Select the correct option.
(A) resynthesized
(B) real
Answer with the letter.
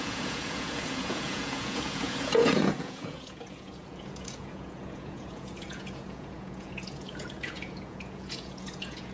A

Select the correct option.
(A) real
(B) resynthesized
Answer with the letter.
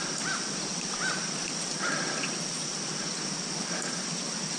A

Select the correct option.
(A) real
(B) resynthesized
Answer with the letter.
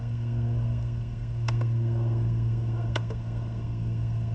B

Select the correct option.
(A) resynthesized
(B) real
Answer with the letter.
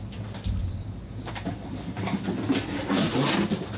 B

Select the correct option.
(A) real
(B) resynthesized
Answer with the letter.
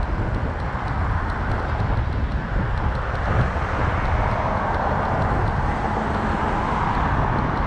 A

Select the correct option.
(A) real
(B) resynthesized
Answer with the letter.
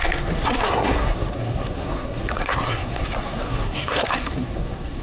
B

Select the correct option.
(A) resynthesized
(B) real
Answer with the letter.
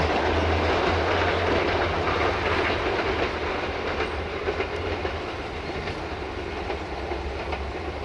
B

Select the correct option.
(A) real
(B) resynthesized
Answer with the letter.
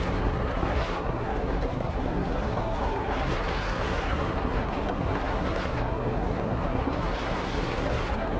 B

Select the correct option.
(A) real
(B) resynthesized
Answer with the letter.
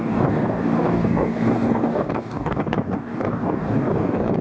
B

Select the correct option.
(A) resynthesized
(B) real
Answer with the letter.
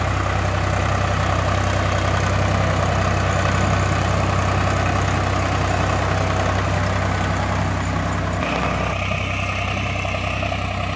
B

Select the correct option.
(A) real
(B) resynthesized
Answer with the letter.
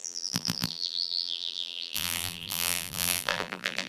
B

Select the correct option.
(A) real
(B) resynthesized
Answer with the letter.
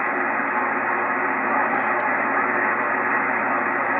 A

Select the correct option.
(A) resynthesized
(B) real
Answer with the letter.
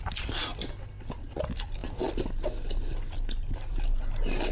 B